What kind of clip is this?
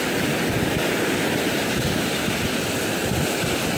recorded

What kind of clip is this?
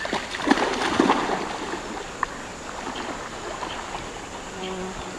recorded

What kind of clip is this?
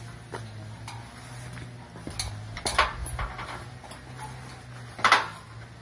recorded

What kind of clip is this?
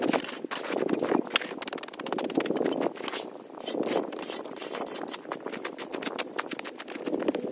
recorded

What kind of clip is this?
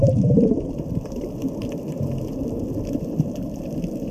remade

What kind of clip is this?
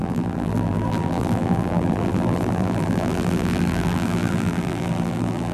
remade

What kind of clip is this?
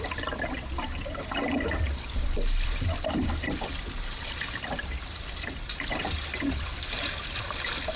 remade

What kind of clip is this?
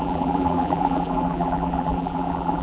remade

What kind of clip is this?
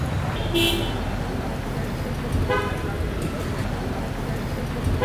recorded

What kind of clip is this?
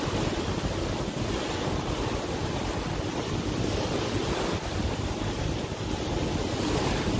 recorded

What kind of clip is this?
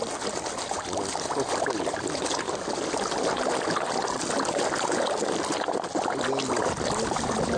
recorded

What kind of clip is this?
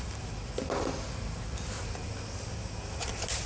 recorded